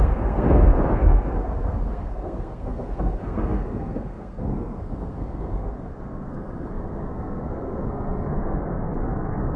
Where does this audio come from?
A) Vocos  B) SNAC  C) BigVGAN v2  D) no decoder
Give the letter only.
B